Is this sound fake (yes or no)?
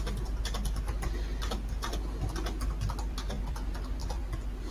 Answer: no